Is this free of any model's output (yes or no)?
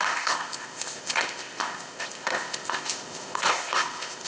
no